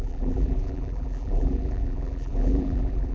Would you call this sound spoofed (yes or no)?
yes